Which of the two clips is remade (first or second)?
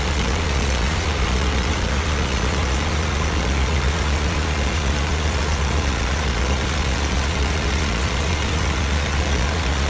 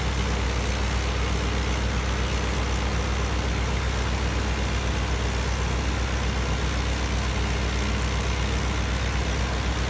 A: first